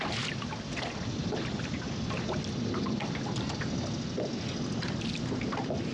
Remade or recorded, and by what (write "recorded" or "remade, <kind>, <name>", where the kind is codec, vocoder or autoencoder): recorded